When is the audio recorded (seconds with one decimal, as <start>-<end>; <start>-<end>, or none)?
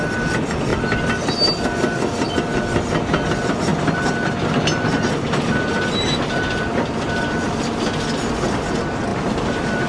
0.0-9.1